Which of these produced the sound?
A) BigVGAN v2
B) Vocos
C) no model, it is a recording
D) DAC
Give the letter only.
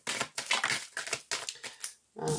C